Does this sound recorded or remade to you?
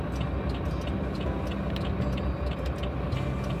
recorded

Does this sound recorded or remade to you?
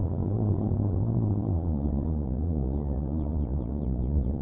remade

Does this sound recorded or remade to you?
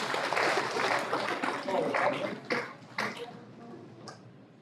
recorded